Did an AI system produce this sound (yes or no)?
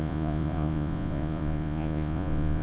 yes